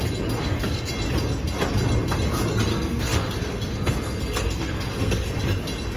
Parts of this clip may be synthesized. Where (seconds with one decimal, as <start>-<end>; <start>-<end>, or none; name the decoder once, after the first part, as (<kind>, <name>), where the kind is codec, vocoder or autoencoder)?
0.4-0.9 (codec, SNAC); 2.7-5.4

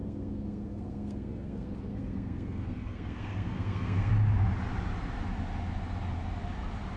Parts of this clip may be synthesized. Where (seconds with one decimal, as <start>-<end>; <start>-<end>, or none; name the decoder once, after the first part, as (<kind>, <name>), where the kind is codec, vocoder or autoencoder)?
0.0-4.1 (codec, SNAC)

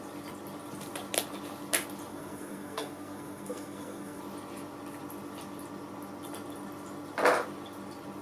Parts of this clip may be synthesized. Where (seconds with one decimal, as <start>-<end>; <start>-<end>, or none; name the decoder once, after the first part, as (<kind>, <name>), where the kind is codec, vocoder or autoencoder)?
2.1-4.2 (codec, SNAC)

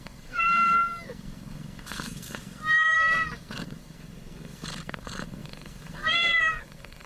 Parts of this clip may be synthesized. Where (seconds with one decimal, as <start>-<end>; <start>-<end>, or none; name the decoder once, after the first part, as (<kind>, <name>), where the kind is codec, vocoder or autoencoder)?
0.0-7.1 (codec, SNAC)

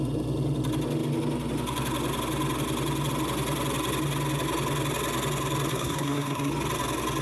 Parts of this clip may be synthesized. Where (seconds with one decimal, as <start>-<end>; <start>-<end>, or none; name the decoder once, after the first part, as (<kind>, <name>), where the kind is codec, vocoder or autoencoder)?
5.7-6.5 (codec, SNAC)